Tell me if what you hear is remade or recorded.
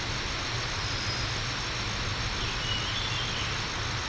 recorded